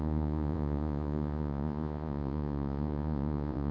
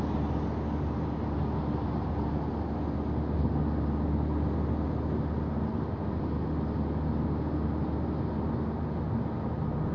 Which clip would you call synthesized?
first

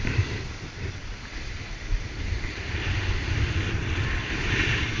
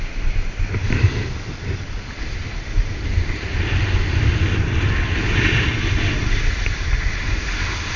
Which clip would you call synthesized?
first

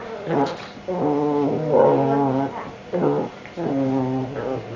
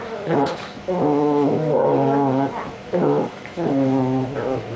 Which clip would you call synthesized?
second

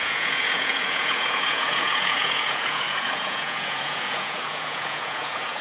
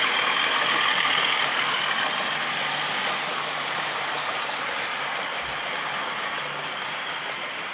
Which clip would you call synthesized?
first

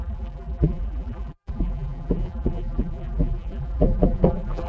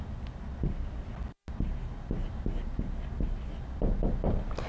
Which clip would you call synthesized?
first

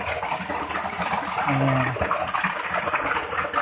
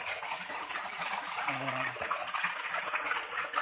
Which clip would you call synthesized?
second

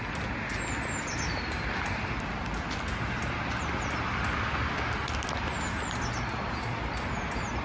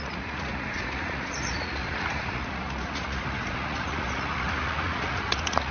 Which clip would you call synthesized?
second